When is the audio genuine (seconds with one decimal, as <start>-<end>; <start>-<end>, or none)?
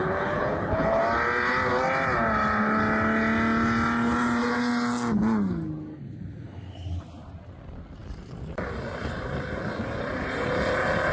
1.0-11.1